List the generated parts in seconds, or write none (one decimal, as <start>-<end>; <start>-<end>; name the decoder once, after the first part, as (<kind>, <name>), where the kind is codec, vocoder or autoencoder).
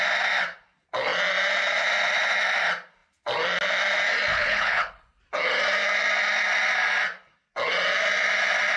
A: 4.3-5.2 (codec, HILCodec)